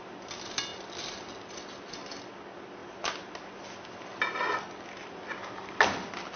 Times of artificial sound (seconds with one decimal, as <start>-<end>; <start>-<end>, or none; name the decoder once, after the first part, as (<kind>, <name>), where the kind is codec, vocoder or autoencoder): none